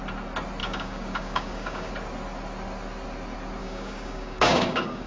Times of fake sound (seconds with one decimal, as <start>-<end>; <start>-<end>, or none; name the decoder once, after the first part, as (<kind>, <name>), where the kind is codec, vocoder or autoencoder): 0.6-1.9 (codec, DAC); 3.6-5.1